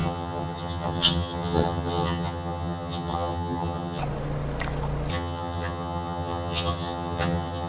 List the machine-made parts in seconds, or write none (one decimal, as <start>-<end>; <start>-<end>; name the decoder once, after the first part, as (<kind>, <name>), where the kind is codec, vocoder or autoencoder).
0.0-4.0 (vocoder, HiFi-GAN); 5.1-7.7